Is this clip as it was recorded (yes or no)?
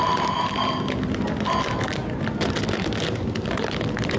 yes